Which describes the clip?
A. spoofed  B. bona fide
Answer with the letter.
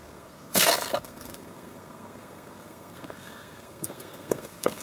A